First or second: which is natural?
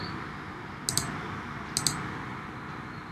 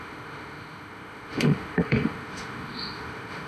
first